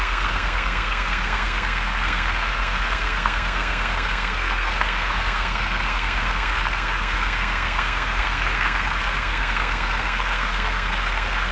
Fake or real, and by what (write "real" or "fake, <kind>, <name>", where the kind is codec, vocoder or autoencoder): fake, codec, SNAC